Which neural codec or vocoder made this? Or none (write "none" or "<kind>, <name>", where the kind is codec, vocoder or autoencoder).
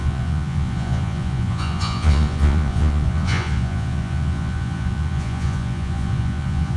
vocoder, Vocos